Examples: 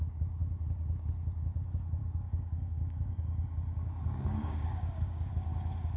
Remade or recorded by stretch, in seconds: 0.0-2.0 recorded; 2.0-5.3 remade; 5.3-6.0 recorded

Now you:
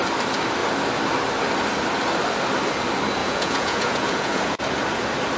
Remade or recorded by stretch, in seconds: 0.0-3.2 recorded; 3.2-4.6 remade; 4.6-5.4 recorded

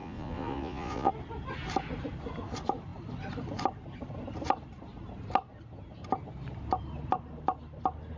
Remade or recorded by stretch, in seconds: 0.0-1.1 remade; 1.1-8.2 recorded

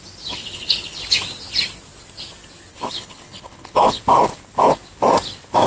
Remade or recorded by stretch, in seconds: 0.0-0.4 recorded; 0.4-1.0 remade; 1.0-2.7 recorded; 2.7-4.0 remade; 4.0-5.7 recorded

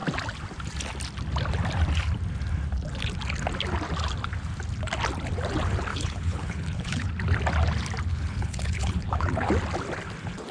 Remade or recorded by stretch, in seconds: 0.0-5.9 recorded; 5.9-7.1 remade; 7.1-8.1 recorded; 8.1-9.5 remade; 9.5-10.5 recorded

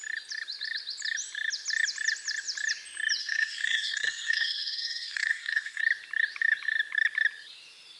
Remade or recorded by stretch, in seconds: 0.0-3.2 recorded; 3.2-5.8 remade; 5.8-8.0 recorded

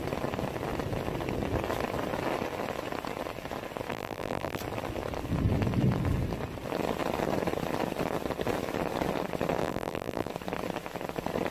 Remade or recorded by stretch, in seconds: 0.0-3.9 recorded; 3.9-4.6 remade; 4.6-9.6 recorded; 9.6-10.3 remade; 10.3-11.5 recorded